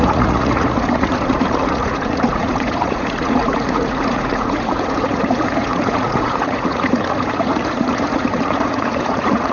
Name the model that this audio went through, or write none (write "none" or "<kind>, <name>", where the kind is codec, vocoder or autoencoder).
vocoder, Vocos